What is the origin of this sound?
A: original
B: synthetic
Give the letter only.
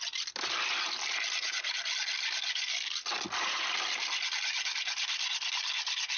A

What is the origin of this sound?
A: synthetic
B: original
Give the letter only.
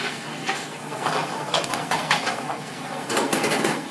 A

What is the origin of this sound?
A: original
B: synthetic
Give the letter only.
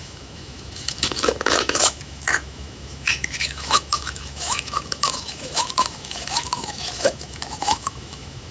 B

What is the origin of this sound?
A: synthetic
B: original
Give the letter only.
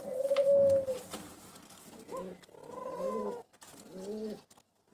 B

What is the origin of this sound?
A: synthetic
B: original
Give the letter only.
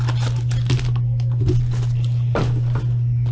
B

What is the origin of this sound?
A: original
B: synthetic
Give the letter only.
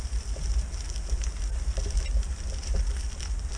A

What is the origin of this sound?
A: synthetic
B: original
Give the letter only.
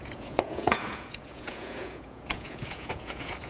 A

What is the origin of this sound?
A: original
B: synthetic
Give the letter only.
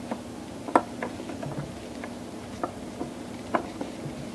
A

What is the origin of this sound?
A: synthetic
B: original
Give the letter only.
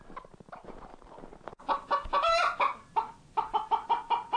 B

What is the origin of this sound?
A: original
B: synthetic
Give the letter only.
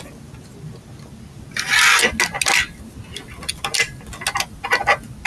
A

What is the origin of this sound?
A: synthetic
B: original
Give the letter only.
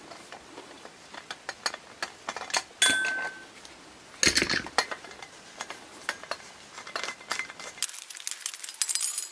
B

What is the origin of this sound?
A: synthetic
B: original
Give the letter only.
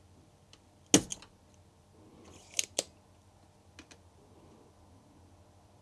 B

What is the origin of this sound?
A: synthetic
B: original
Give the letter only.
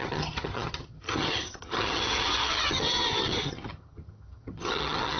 A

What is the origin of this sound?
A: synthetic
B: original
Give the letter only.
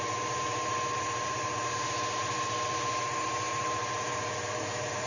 A